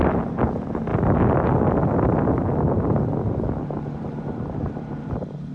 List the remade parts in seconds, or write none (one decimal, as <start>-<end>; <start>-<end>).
none